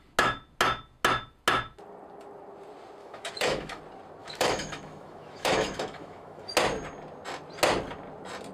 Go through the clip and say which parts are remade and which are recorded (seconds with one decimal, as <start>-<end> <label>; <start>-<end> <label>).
0.0-3.0 recorded; 3.0-3.8 remade; 3.8-4.2 recorded; 4.2-6.5 remade; 6.5-8.5 recorded